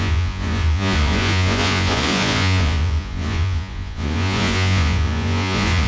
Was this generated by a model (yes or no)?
yes